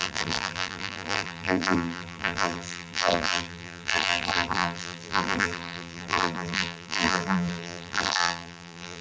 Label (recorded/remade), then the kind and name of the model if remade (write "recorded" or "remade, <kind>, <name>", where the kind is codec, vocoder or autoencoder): remade, vocoder, BigVGAN v2